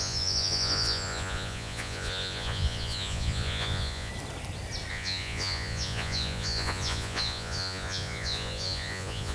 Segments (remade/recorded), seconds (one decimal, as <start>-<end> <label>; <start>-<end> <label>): 0.0-4.1 remade; 4.1-4.9 recorded; 4.9-9.3 remade